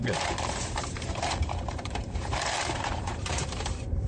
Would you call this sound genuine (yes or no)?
no